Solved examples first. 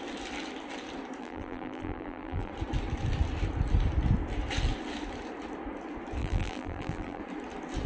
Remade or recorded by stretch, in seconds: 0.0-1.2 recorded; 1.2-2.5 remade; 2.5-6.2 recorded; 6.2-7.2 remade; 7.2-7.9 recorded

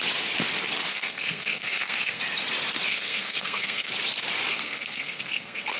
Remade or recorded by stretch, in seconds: 0.0-0.9 recorded; 0.9-2.2 remade; 2.2-2.9 recorded; 2.9-3.9 remade; 3.9-4.5 recorded; 4.5-5.8 remade

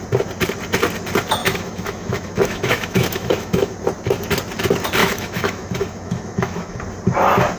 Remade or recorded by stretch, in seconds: 0.0-1.4 recorded; 1.4-3.7 remade; 3.7-5.0 recorded; 5.0-6.8 remade; 6.8-7.6 recorded

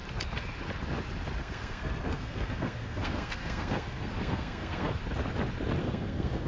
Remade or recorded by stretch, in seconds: 0.0-1.4 recorded; 1.4-5.0 remade; 5.0-5.8 recorded; 5.8-6.5 remade

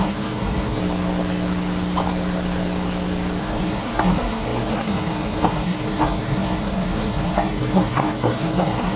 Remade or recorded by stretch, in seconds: 0.0-0.8 remade; 0.8-3.4 recorded; 3.4-9.0 remade

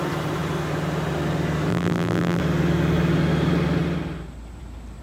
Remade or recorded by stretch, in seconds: 0.0-1.7 recorded; 1.7-2.4 remade; 2.4-5.0 recorded

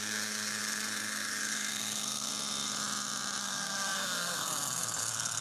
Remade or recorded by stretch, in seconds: 0.0-2.3 remade; 2.3-3.4 recorded; 3.4-5.4 remade

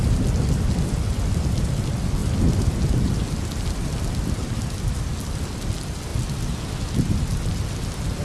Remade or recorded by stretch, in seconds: 0.0-2.2 recorded; 2.2-2.8 remade; 2.8-8.2 recorded